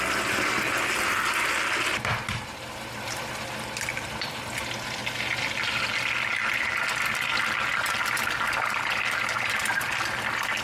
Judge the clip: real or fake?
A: real